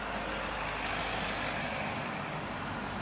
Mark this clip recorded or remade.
recorded